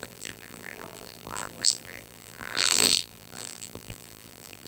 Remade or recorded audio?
remade